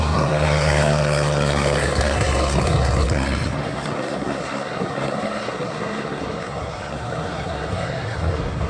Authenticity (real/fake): fake